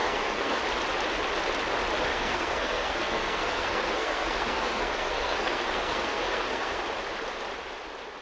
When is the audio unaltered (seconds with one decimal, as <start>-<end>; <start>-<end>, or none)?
0.6-2.1; 6.8-8.2